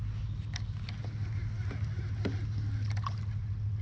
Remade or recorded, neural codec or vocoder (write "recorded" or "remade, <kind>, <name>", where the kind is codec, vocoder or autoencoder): recorded